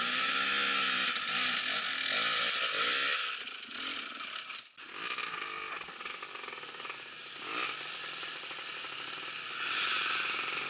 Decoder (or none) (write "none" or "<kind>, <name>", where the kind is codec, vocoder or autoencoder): none